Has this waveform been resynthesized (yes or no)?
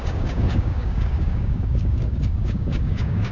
yes